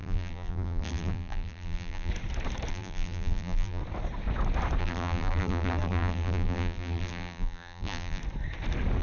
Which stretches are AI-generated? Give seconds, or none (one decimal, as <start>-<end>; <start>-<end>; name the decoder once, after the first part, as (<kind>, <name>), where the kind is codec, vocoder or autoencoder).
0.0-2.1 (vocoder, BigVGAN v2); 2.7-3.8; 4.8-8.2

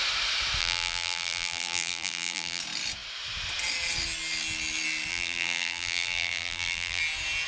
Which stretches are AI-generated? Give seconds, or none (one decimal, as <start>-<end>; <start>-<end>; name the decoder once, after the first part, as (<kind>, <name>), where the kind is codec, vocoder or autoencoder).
0.6-2.6 (vocoder, BigVGAN v2); 5.1-7.0

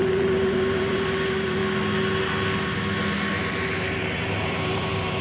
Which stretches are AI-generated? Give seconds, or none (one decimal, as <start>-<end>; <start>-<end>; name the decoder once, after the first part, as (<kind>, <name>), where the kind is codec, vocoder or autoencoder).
0.0-1.6 (vocoder, BigVGAN v2); 3.5-5.2

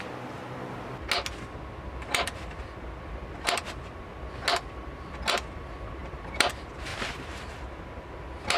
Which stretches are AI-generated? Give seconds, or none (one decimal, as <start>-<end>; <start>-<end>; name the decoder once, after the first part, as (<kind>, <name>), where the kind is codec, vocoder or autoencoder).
6.0-6.5 (vocoder, BigVGAN v2); 6.9-7.5